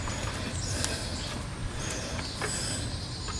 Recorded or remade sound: recorded